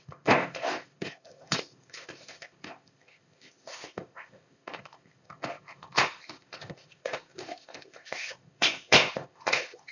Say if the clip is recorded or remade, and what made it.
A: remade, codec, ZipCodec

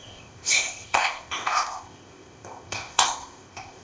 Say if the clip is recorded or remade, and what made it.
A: remade, codec, ZipCodec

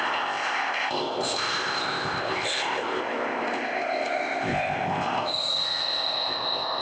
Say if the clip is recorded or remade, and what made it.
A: remade, codec, ZipCodec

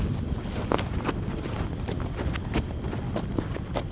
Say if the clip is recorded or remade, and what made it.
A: recorded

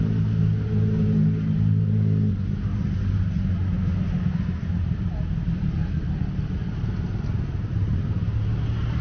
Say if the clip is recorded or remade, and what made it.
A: recorded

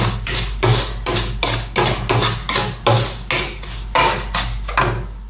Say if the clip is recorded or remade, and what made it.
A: recorded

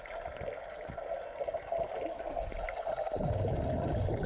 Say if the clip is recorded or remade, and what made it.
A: recorded